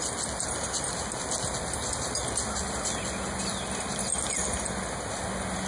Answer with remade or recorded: recorded